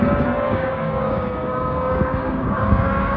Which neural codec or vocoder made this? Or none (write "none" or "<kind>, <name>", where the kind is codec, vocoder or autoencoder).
codec, DAC